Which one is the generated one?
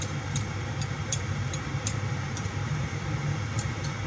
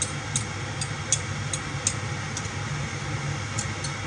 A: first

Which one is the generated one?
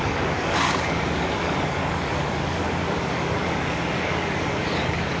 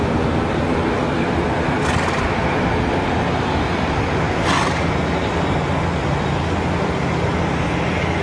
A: first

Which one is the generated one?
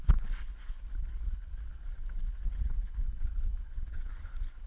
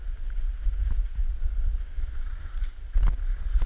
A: first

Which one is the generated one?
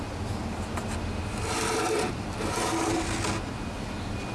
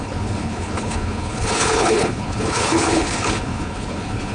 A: second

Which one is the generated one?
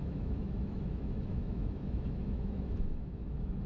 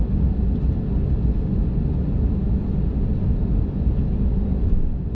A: first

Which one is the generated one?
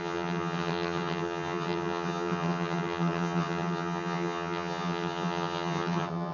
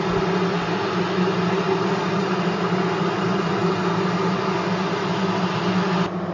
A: first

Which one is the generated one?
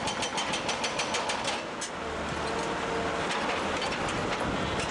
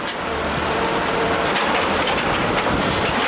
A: second